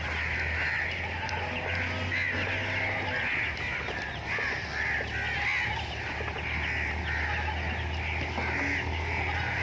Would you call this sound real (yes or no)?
yes